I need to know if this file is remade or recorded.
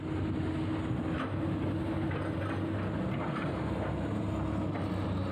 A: recorded